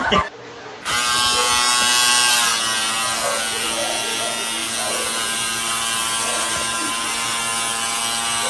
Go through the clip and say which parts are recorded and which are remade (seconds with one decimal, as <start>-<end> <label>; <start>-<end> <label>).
0.0-8.5 recorded